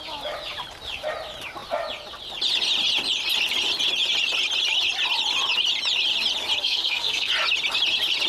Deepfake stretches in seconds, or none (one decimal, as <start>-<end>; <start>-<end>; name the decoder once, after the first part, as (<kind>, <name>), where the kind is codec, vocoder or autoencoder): 6.6-7.3 (codec, SNAC)